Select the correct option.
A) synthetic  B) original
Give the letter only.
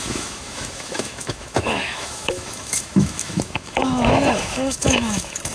A